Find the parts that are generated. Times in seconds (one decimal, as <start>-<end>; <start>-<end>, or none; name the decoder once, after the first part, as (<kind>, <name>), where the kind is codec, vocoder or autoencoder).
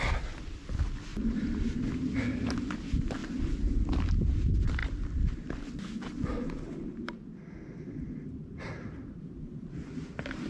1.1-1.8 (vocoder, BigVGAN v2); 3.2-4.1; 4.8-9.2